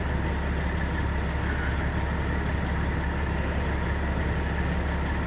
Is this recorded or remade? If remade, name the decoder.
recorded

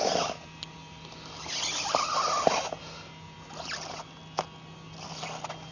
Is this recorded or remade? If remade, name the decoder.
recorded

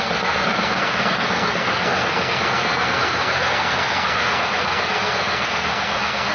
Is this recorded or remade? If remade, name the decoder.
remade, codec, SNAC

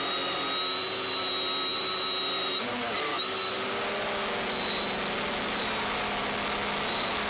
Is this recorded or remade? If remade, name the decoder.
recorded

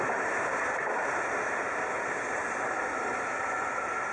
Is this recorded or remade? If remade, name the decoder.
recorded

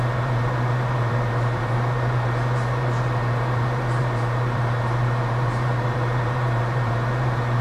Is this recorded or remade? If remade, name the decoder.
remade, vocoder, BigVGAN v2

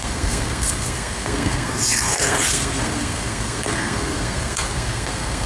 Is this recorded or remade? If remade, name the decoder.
remade, codec, SNAC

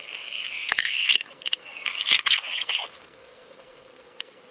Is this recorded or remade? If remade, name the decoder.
remade, codec, SNAC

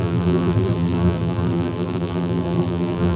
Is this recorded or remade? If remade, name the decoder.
remade, vocoder, BigVGAN v2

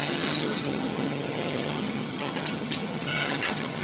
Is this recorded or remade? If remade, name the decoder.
remade, vocoder, HiFi-GAN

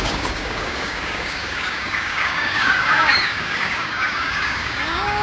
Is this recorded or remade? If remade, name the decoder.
remade, codec, DAC